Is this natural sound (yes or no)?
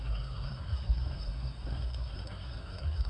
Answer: no